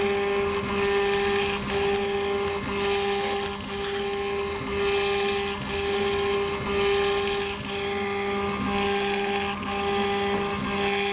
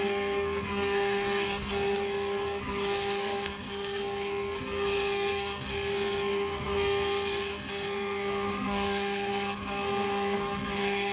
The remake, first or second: second